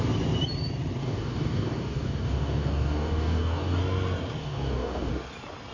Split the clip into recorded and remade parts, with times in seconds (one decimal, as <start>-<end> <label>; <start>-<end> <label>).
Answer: 0.0-1.0 recorded; 1.0-3.8 remade; 3.8-4.4 recorded; 4.4-5.1 remade; 5.1-5.7 recorded